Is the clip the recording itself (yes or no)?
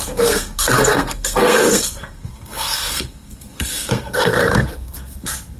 no